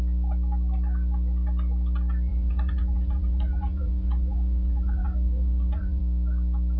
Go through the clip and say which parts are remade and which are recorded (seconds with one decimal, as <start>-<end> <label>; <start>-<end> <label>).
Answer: 0.0-2.3 recorded; 2.3-6.0 remade; 6.0-6.8 recorded